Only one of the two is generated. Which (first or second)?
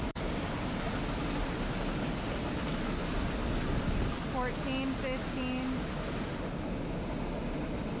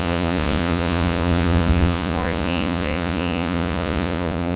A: second